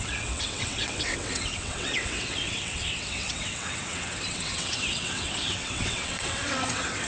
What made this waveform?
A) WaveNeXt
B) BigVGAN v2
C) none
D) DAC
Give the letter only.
A